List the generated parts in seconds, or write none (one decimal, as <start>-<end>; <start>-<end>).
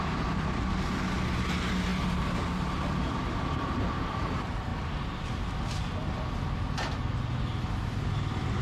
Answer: none